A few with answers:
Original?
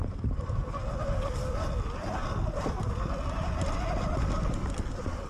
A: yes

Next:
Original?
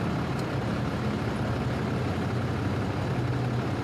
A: yes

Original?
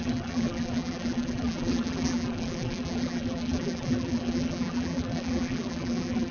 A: no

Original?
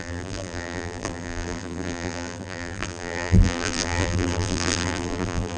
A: no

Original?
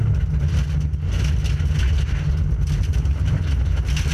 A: yes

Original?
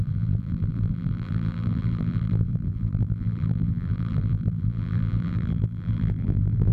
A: no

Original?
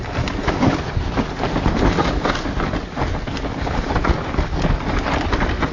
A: yes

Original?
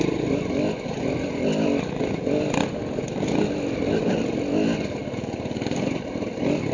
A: yes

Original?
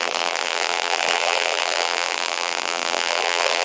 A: no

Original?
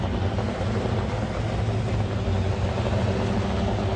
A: yes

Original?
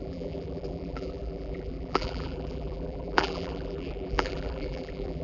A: no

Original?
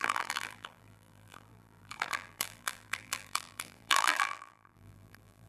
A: no